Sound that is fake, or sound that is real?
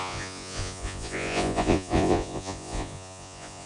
fake